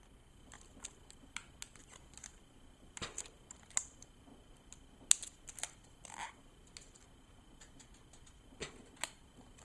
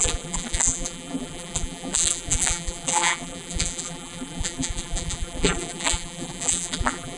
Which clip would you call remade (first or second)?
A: second